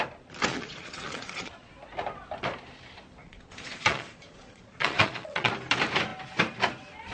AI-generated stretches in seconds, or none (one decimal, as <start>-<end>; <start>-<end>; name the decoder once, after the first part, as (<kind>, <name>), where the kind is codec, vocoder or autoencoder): 0.5-1.7 (vocoder, Vocos); 3.2-5.5